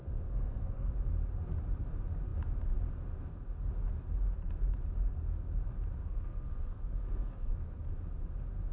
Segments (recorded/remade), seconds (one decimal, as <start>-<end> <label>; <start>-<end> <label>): 0.0-0.9 remade; 0.9-6.0 recorded; 6.0-7.5 remade; 7.5-8.7 recorded